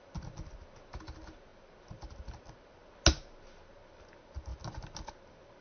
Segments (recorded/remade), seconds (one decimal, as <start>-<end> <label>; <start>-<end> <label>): 0.0-4.5 recorded; 4.5-5.1 remade; 5.1-5.6 recorded